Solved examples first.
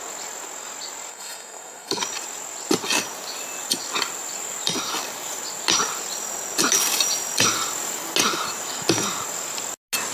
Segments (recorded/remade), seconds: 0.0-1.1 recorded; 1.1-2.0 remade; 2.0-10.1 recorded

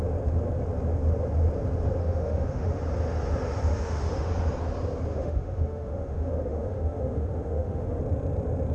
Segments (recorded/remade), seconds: 0.0-2.0 recorded; 2.0-2.8 remade; 2.8-3.7 recorded; 3.7-4.3 remade; 4.3-5.1 recorded; 5.1-8.0 remade; 8.0-8.7 recorded

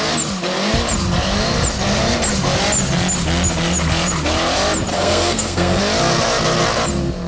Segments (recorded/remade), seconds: 0.0-4.9 recorded; 4.9-5.8 remade; 5.8-7.3 recorded

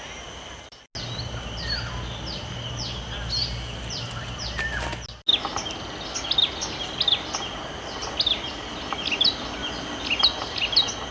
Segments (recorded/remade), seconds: 0.0-11.1 recorded

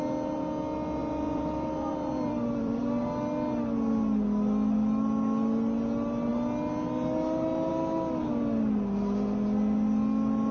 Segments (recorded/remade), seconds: 0.0-1.0 recorded; 1.0-2.8 remade; 2.8-10.5 recorded

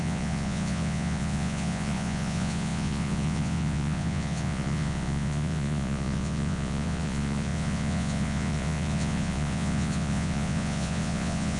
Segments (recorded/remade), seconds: 0.0-11.6 remade